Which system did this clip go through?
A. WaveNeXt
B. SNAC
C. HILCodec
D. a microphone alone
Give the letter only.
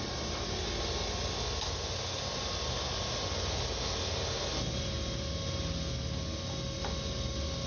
D